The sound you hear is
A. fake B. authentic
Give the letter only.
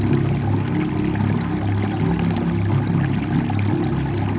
B